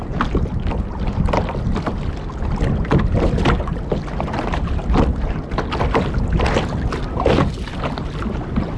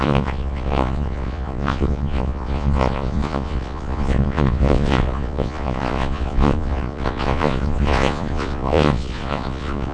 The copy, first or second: second